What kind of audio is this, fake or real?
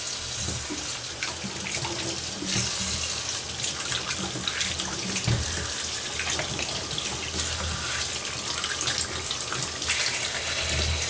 real